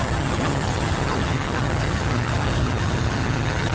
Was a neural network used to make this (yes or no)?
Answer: yes